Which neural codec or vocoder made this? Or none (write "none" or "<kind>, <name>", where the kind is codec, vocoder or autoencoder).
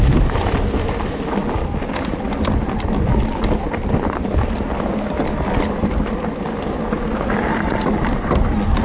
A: none